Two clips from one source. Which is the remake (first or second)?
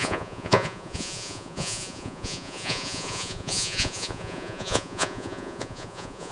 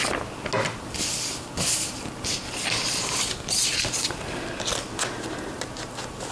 first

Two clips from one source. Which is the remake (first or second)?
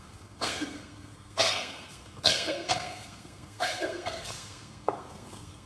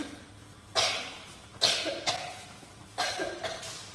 first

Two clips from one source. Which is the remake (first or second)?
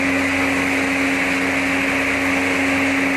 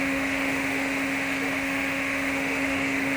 second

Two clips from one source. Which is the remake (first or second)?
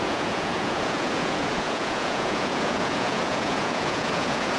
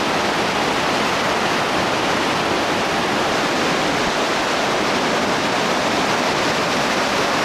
first